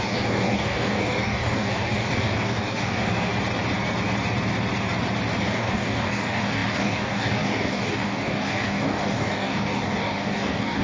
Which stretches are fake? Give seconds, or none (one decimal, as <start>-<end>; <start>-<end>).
0.0-3.3; 5.4-10.8